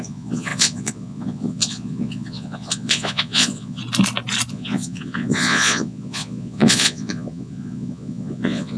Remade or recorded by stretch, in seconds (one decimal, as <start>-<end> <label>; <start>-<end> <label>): 0.0-3.8 remade; 3.8-4.5 recorded; 4.5-8.8 remade